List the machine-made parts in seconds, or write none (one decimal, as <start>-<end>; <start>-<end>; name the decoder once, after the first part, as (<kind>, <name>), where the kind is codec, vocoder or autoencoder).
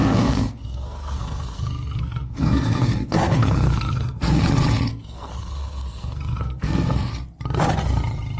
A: 0.0-4.4 (codec, SNAC); 4.9-7.1